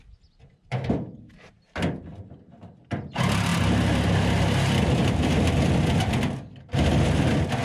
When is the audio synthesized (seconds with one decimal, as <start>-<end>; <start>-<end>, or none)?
none